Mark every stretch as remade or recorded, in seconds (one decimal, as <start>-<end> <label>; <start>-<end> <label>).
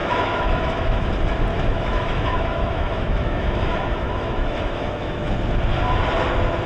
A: 0.0-1.1 remade; 1.1-1.5 recorded; 1.5-5.3 remade; 5.3-6.7 recorded